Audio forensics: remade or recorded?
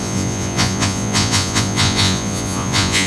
remade